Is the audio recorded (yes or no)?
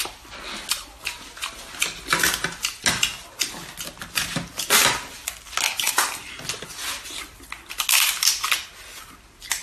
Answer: yes